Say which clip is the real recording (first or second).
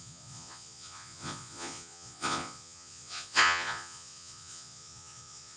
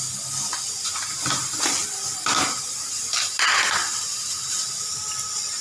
second